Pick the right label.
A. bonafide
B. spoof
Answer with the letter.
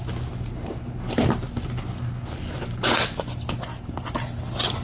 A